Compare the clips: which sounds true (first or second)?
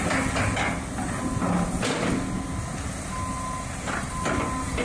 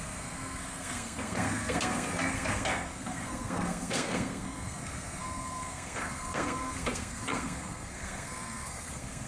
first